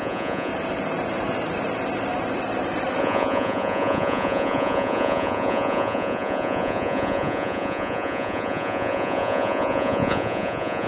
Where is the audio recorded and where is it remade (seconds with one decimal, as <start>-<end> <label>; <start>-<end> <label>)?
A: 0.0-0.5 remade; 0.5-3.0 recorded; 3.0-10.9 remade